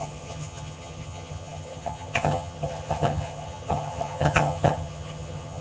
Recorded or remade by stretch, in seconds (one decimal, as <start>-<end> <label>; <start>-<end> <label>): 0.0-5.6 remade